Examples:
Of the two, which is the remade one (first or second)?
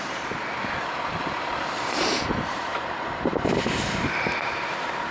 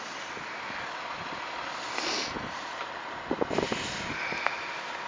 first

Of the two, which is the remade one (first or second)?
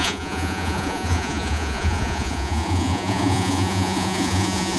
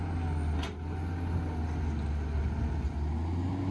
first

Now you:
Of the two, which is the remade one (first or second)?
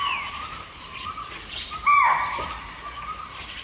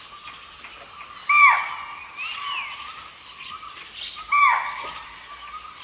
first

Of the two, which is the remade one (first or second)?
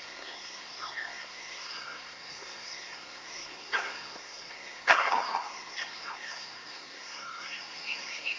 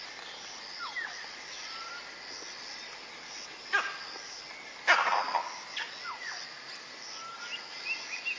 first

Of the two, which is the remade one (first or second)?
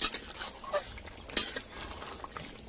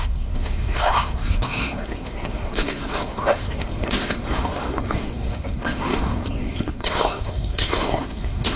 second